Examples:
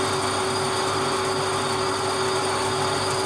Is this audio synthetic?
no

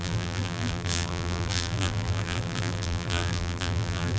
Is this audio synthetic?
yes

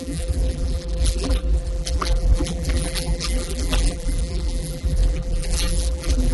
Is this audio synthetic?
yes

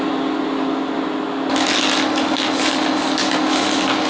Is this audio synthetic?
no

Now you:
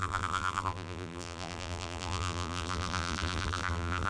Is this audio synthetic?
yes